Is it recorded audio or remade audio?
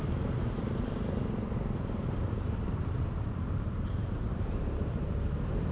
remade